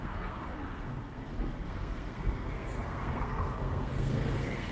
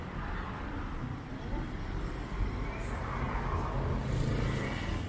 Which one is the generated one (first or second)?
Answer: first